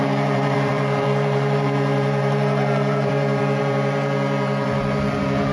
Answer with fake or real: fake